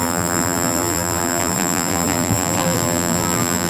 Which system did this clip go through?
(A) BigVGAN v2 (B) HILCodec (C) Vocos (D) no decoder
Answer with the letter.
A